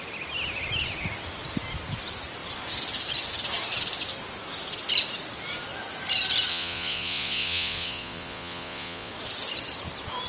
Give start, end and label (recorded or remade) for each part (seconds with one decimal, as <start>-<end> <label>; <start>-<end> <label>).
0.0-6.5 recorded; 6.5-9.1 remade; 9.1-10.3 recorded